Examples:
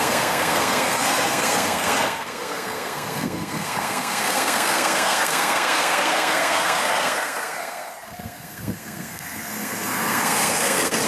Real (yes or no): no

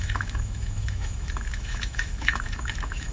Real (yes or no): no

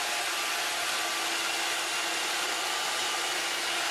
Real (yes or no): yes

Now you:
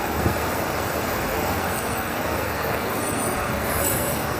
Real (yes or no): no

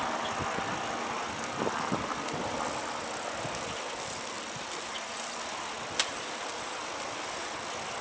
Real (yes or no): yes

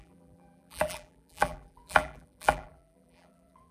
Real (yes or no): no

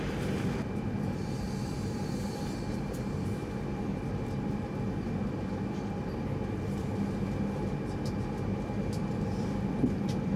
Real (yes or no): yes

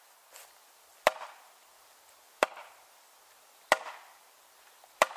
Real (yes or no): yes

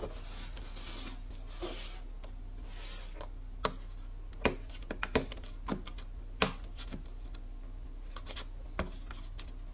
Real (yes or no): yes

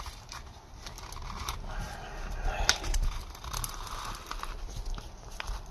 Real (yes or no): yes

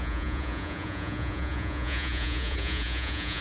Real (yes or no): no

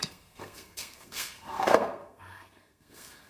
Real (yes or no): no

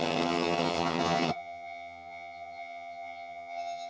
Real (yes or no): no